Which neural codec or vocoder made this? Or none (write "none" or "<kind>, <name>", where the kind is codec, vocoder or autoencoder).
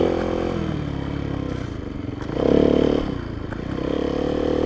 none